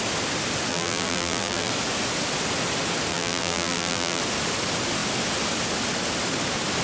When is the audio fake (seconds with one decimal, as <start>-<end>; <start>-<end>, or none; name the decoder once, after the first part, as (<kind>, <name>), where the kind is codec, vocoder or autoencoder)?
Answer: 0.7-1.7 (vocoder, BigVGAN v2); 3.1-4.2